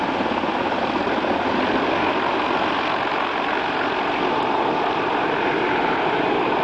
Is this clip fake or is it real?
real